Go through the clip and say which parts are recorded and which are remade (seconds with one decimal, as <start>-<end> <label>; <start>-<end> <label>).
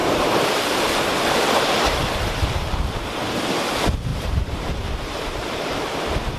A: 0.0-3.4 remade; 3.4-4.1 recorded; 4.1-5.9 remade; 5.9-6.4 recorded